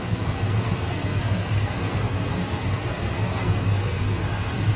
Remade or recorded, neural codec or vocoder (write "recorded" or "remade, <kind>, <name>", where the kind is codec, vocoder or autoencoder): remade, codec, SNAC